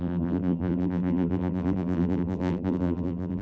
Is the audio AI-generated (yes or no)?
yes